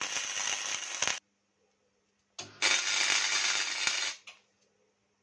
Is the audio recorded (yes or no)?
yes